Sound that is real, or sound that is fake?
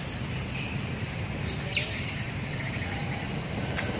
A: real